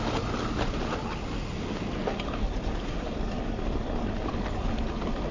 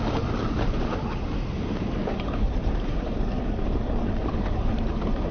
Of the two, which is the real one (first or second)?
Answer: first